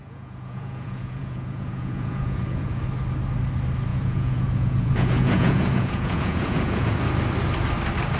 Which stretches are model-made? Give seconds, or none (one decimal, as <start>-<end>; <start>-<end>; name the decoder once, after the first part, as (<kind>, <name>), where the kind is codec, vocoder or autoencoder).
0.0-2.8 (vocoder, Vocos); 3.9-6.9